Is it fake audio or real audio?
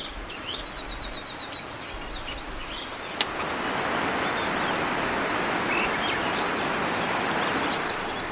real